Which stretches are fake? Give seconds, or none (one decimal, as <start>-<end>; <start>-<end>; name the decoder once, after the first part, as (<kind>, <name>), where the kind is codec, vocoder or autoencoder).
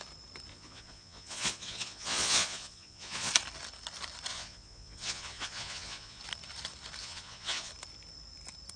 0.5-3.3 (vocoder, Vocos); 4.3-6.2; 7.0-7.7